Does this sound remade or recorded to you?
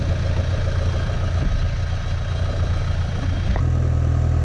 recorded